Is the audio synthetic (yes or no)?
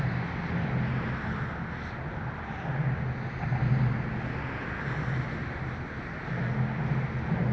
no